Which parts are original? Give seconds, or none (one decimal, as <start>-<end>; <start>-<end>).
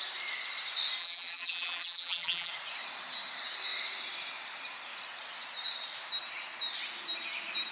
0.0-1.0; 2.5-7.7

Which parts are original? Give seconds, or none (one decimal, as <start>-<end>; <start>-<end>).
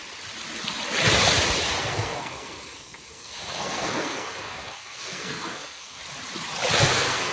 0.0-1.8; 6.0-6.8